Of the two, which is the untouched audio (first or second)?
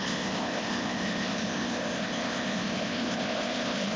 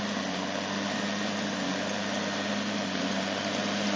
second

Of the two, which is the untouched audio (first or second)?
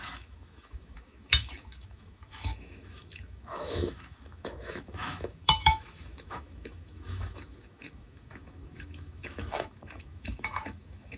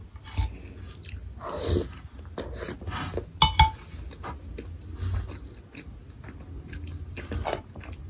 second